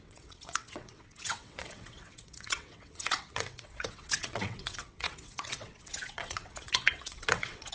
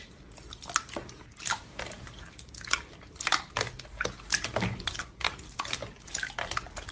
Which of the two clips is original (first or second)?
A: second